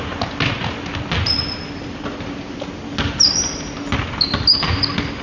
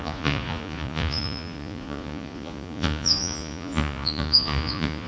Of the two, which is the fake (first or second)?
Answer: second